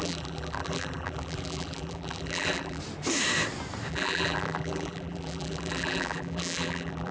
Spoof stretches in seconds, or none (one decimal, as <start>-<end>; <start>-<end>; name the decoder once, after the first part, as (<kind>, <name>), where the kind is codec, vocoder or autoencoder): 0.0-2.8 (vocoder, BigVGAN v2); 3.9-7.1

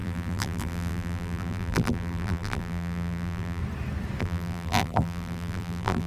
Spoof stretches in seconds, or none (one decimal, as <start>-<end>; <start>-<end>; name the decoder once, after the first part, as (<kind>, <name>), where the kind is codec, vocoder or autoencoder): 0.0-3.6 (vocoder, BigVGAN v2); 4.2-6.1

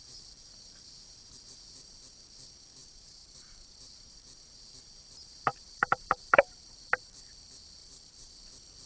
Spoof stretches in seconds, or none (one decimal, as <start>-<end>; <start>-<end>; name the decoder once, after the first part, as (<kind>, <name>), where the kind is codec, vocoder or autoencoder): 2.8-3.8 (vocoder, BigVGAN v2); 5.5-6.5; 7.8-8.4

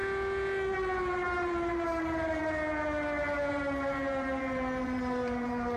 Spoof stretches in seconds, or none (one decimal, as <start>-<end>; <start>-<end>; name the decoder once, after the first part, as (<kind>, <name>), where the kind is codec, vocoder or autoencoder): 1.0-2.4 (vocoder, BigVGAN v2); 3.5-5.8

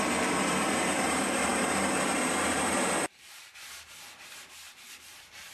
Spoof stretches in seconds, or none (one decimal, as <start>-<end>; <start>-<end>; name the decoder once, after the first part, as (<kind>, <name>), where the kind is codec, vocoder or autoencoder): 0.0-5.5 (vocoder, BigVGAN v2)